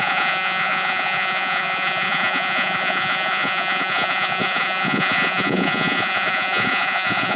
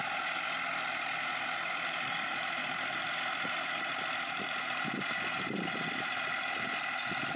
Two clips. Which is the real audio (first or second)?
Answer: second